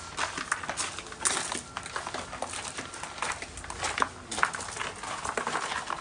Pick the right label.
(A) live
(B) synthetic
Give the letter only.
A